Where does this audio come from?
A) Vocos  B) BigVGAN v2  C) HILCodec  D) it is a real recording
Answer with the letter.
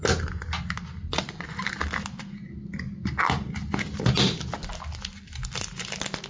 D